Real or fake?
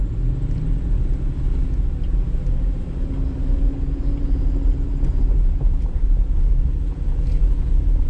real